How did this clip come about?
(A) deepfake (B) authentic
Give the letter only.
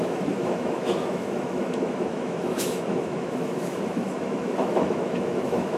A